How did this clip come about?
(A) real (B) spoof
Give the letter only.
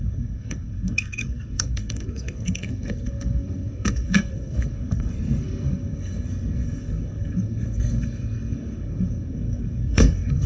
B